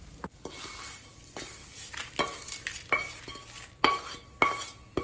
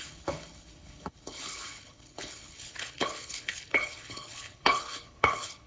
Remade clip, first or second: second